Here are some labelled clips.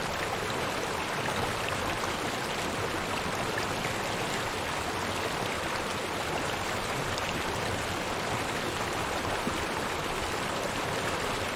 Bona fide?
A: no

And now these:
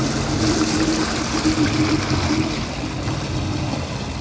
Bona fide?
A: yes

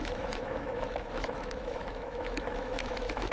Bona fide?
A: no